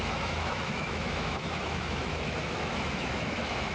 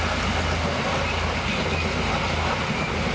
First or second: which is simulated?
first